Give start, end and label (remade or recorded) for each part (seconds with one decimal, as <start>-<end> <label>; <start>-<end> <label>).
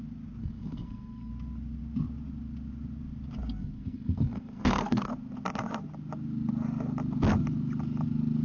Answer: 0.0-0.4 recorded; 0.4-1.3 remade; 1.3-3.6 recorded; 3.6-5.1 remade; 5.1-8.4 recorded